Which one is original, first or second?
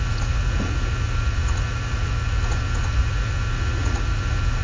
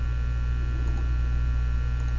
second